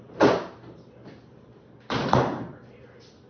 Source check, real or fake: real